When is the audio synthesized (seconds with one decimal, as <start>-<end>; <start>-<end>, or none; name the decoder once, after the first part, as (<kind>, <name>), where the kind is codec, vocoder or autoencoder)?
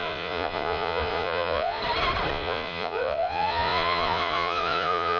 0.0-1.8 (vocoder, Vocos); 2.3-5.2